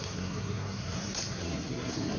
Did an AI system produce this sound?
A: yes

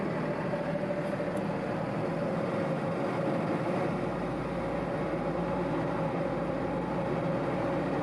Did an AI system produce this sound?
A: no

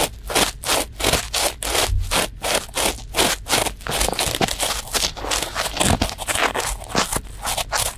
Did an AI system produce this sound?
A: no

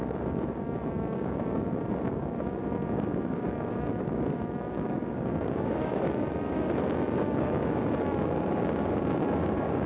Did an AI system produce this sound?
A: yes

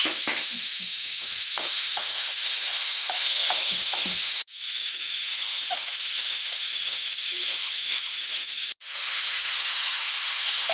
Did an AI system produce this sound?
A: yes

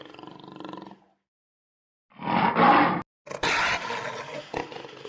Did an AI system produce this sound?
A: no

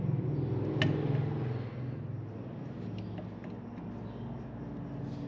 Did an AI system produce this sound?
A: no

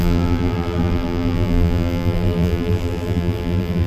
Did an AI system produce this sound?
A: yes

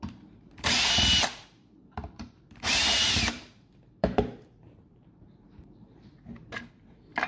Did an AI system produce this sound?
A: yes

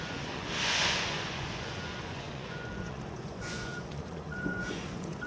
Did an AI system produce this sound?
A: yes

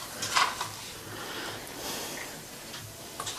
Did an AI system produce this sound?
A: no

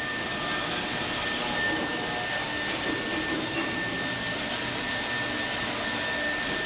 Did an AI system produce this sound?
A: no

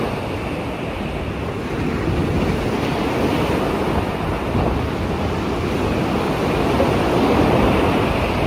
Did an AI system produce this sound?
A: no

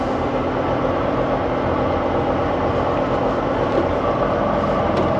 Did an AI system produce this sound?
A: no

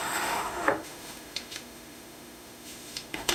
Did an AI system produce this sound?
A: yes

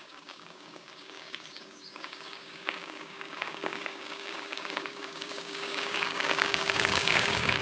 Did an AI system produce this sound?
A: yes